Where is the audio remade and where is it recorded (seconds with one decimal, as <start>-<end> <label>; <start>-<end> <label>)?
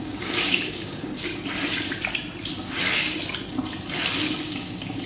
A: 0.0-1.3 remade; 1.3-4.4 recorded; 4.4-5.1 remade